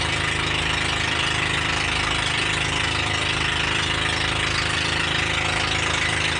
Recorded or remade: recorded